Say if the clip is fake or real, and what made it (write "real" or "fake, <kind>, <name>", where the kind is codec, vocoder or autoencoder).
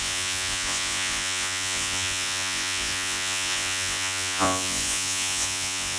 fake, vocoder, Vocos